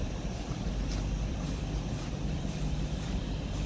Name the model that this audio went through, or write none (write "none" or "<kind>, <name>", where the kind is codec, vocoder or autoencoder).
vocoder, BigVGAN v2